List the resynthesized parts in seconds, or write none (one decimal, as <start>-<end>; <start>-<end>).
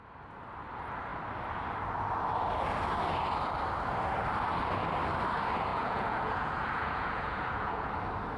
5.7-7.9